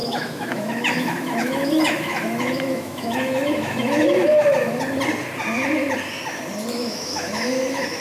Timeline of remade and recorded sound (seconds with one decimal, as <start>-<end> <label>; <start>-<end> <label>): 0.0-4.8 remade; 4.8-6.8 recorded; 6.8-8.0 remade